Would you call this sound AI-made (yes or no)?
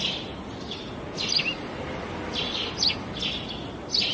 no